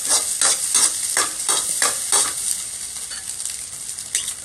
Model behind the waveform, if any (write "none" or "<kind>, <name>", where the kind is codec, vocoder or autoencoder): none